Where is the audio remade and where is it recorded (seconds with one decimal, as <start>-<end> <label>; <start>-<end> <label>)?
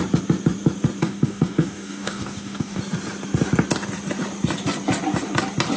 0.0-1.0 recorded; 1.0-2.8 remade; 2.8-5.8 recorded